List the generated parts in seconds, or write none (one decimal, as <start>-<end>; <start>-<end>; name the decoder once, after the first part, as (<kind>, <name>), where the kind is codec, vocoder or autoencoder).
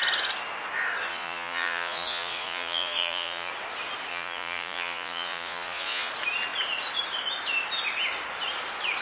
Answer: 1.1-3.5 (vocoder, Vocos); 4.1-6.1